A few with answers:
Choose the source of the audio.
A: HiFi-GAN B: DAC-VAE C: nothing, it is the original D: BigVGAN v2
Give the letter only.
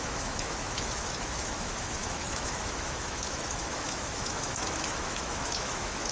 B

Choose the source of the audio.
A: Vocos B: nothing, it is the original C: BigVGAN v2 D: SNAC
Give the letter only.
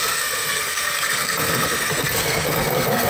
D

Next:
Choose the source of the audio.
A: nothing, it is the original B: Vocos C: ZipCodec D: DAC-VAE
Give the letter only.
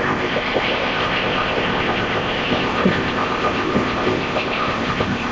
C